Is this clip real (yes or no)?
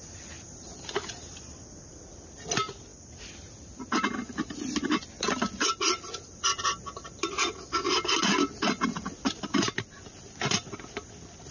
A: yes